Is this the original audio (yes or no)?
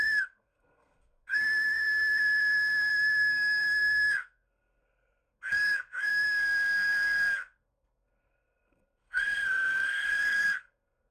no